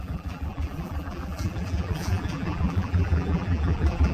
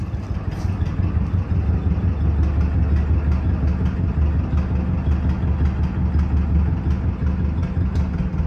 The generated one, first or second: first